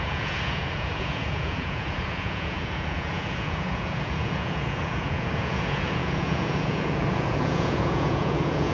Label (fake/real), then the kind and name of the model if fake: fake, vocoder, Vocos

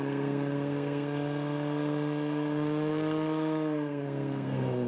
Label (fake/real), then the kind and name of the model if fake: fake, codec, SNAC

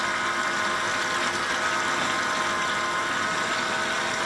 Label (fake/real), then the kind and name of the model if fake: real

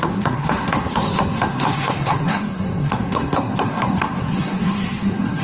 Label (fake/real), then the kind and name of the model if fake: fake, codec, SNAC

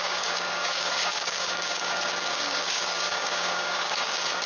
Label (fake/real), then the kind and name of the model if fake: fake, codec, DAC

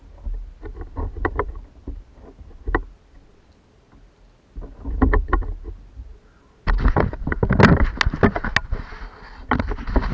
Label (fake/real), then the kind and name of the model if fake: real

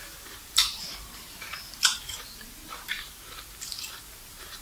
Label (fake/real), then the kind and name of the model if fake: fake, vocoder, BigVGAN v2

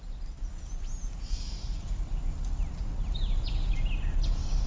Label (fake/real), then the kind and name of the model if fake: real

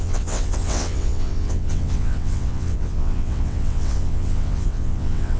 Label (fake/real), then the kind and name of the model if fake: fake, vocoder, WaveNeXt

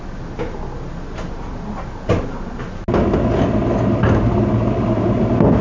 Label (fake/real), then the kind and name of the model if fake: real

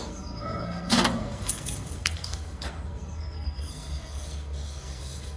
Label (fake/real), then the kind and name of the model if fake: fake, codec, SNAC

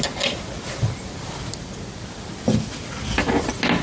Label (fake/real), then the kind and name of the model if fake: real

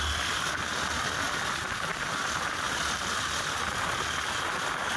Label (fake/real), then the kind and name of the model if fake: real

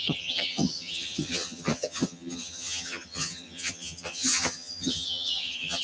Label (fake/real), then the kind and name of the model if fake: fake, vocoder, HiFi-GAN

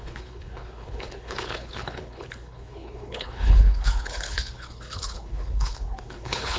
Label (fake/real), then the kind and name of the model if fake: fake, codec, HILCodec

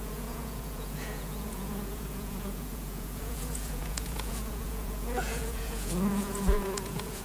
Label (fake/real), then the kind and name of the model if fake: fake, vocoder, Vocos